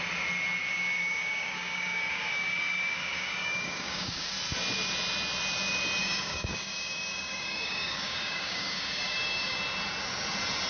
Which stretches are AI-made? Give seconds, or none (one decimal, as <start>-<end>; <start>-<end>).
0.6-4.3; 6.0-9.6